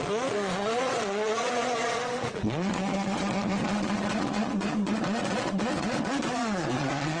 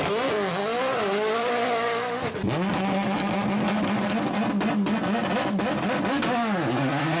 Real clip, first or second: second